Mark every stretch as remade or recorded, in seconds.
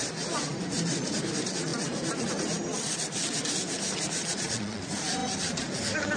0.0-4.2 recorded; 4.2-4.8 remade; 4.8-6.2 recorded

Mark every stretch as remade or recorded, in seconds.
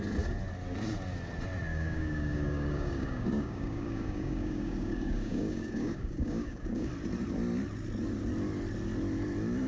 0.0-1.7 recorded; 1.7-6.9 remade; 6.9-9.7 recorded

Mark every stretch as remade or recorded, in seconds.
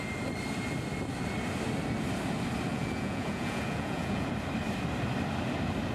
0.0-2.7 recorded; 2.7-4.3 remade; 4.3-5.9 recorded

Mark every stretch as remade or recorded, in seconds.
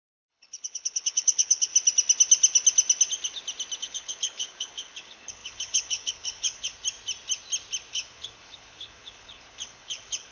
0.0-1.7 remade; 1.7-3.8 recorded; 3.8-6.7 remade; 6.7-7.9 recorded; 7.9-10.3 remade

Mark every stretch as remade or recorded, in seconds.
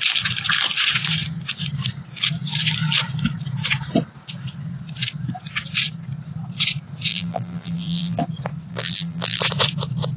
0.0-7.1 recorded; 7.1-8.2 remade; 8.2-8.7 recorded; 8.7-9.4 remade; 9.4-10.2 recorded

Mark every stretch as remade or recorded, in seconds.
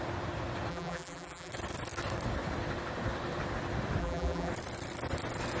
0.0-0.7 recorded; 0.7-1.5 remade; 1.5-4.0 recorded; 4.0-4.5 remade; 4.5-5.6 recorded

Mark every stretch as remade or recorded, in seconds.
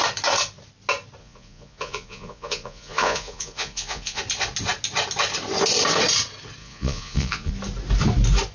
0.0-1.2 recorded; 1.2-4.2 remade; 4.2-6.6 recorded; 6.6-7.5 remade; 7.5-8.5 recorded